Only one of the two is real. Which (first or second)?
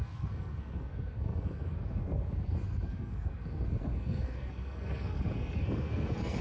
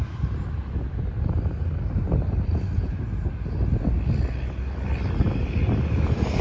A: second